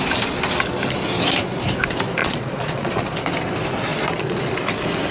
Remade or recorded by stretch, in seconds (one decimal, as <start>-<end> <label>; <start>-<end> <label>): 0.0-2.2 recorded; 2.2-3.2 remade; 3.2-3.9 recorded; 3.9-4.5 remade; 4.5-5.1 recorded